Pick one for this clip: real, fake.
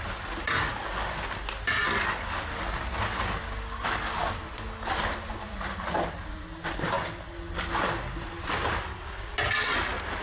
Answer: real